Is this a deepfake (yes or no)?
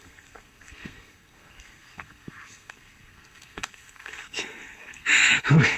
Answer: yes